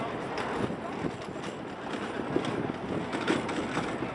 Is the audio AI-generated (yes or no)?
no